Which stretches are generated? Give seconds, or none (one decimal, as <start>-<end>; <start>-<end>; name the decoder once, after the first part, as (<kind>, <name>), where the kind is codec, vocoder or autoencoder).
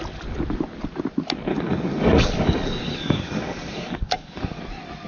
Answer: 1.5-4.6 (codec, DAC)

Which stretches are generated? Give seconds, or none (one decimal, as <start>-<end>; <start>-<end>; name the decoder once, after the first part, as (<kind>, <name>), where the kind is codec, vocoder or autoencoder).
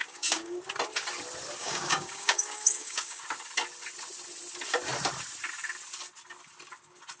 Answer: 0.0-0.6 (codec, DAC); 1.6-3.2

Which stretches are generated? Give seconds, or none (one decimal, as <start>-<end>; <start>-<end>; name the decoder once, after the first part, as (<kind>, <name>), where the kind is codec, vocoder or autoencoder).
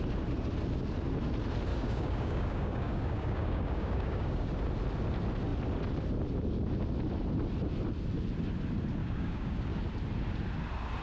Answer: 1.7-4.5 (codec, DAC); 9.0-9.8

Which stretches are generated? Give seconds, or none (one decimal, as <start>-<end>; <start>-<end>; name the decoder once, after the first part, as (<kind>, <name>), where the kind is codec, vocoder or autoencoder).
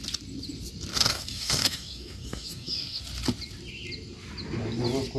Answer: 0.9-3.0 (codec, DAC)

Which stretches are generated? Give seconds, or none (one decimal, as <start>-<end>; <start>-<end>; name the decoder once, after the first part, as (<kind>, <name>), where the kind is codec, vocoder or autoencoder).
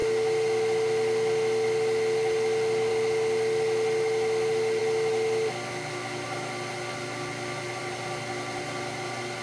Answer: none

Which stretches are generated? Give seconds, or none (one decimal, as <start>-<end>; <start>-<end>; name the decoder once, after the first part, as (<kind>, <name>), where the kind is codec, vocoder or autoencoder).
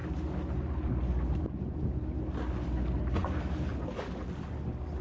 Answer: none